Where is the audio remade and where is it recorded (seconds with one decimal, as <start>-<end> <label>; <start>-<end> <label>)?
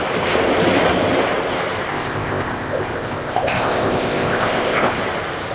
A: 0.0-1.9 recorded; 1.9-5.0 remade; 5.0-5.5 recorded